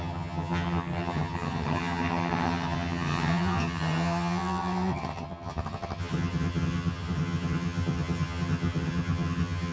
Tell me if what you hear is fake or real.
fake